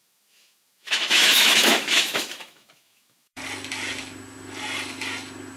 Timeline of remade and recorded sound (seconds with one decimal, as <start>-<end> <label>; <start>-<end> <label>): 0.0-3.4 remade; 3.4-5.6 recorded